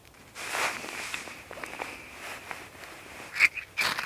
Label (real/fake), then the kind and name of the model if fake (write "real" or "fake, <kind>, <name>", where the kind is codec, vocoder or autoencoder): real